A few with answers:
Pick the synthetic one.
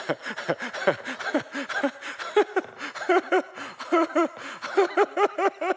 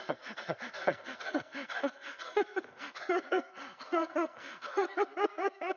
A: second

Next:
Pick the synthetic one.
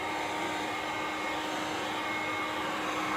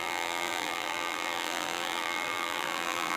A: second